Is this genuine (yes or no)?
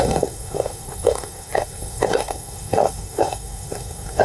no